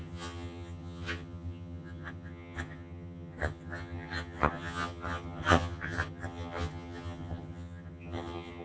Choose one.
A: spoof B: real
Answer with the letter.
A